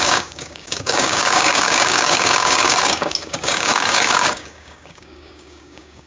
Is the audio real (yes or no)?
no